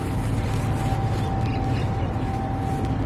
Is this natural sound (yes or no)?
yes